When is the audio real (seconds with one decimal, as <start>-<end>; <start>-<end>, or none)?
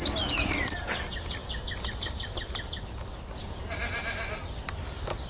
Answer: 0.0-5.3